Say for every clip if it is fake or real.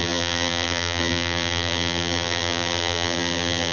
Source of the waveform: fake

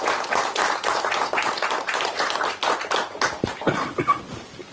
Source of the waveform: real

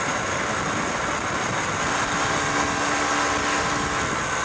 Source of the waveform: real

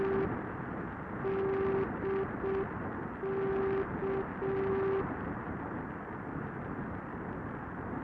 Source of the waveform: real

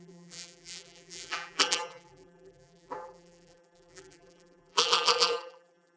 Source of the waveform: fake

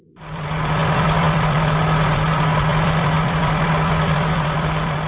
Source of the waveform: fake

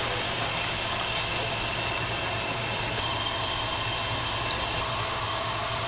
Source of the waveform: real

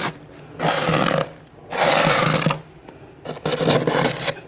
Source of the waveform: real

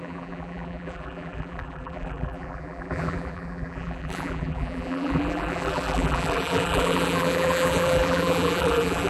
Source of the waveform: fake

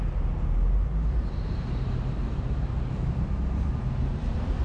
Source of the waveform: fake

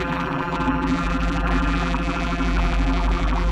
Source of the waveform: fake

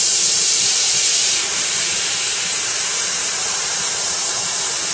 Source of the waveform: fake